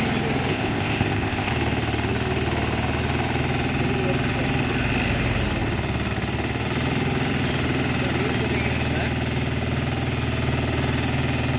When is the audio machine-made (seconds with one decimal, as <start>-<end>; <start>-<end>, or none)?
0.5-1.5